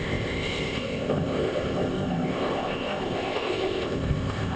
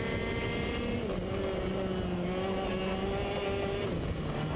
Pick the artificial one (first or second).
first